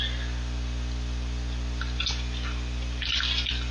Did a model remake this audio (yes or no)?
no